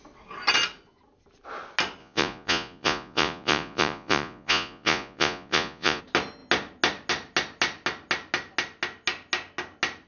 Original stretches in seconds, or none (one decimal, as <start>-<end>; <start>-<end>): 0.0-2.0; 6.0-10.1